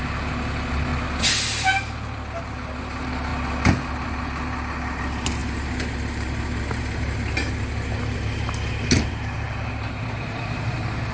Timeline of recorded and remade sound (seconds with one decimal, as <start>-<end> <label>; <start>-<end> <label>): 0.0-0.9 remade; 0.9-2.8 recorded; 2.8-3.3 remade; 3.3-5.0 recorded; 5.0-11.1 remade